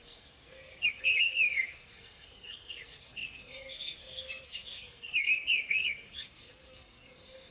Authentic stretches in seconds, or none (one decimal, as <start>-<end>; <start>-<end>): none